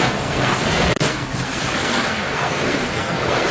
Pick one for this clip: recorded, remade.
remade